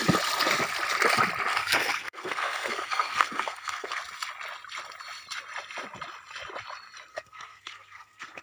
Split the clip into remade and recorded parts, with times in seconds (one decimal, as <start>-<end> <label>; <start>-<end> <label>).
0.0-1.5 recorded; 1.5-4.0 remade; 4.0-7.1 recorded; 7.1-8.4 remade